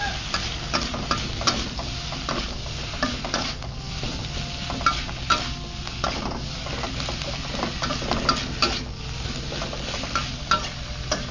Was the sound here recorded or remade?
recorded